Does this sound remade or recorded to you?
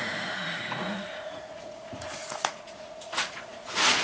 remade